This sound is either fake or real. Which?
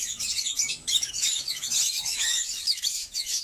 fake